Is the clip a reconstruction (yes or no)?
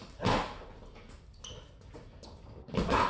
no